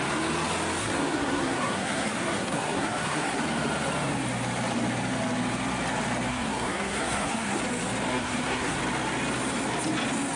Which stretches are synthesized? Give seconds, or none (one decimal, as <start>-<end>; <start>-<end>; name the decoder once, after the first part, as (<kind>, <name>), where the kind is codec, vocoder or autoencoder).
0.8-3.4 (codec, SNAC); 6.3-7.6; 8.1-8.8